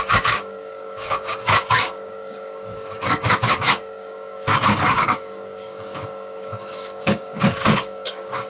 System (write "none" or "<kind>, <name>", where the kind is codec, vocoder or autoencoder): codec, DAC